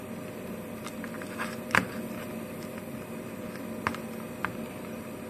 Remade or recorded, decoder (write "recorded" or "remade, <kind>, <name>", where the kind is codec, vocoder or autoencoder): remade, vocoder, BigVGAN v2